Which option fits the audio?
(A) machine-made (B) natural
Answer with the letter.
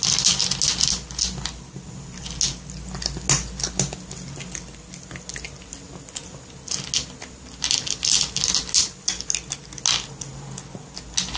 B